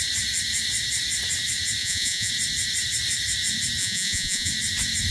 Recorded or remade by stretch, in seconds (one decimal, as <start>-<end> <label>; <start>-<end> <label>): 0.0-1.8 recorded; 1.8-2.3 remade; 2.3-3.8 recorded; 3.8-4.5 remade; 4.5-5.1 recorded